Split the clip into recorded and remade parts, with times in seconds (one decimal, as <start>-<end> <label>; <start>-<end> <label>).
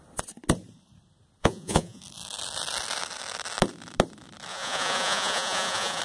0.0-1.4 recorded; 1.4-2.0 remade; 2.0-4.5 recorded; 4.5-6.0 remade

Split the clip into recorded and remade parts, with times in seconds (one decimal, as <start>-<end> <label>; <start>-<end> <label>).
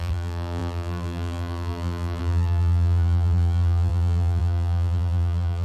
0.0-5.6 remade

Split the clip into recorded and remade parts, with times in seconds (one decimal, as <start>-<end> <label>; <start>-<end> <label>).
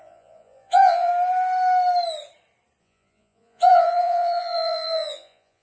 0.0-1.1 remade; 1.1-2.8 recorded; 2.8-5.6 remade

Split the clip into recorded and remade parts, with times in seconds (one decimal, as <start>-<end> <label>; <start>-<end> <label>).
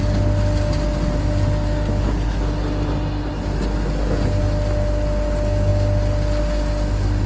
0.0-7.3 recorded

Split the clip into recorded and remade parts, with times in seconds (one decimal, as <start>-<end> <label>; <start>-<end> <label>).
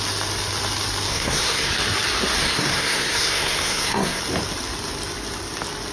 0.0-1.1 recorded; 1.1-1.7 remade; 1.7-2.4 recorded; 2.4-4.2 remade; 4.2-5.9 recorded